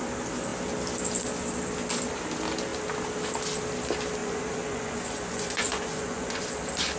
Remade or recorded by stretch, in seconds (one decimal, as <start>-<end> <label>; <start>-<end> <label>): 0.0-4.2 recorded; 4.2-6.4 remade; 6.4-7.0 recorded